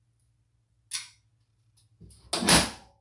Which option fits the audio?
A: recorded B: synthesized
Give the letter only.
A